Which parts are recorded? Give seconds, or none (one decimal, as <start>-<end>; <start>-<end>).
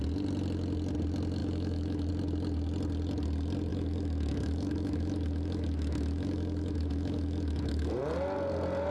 0.0-1.4; 2.1-3.7; 7.9-8.9